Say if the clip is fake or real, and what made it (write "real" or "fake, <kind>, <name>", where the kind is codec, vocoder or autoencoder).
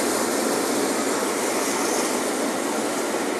real